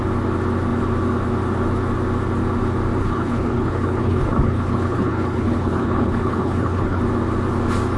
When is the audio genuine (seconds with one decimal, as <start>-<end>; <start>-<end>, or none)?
0.0-3.0; 7.0-8.0